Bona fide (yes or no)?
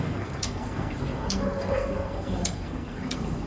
no